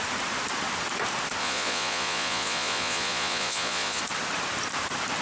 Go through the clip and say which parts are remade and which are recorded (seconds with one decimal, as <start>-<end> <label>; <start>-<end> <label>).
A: 0.0-1.4 recorded; 1.4-4.0 remade; 4.0-5.2 recorded